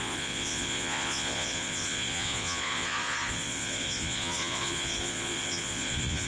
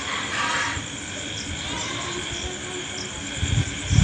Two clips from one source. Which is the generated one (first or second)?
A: first